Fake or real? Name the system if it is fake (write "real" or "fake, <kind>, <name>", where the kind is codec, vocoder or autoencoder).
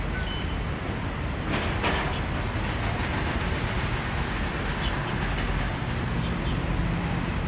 real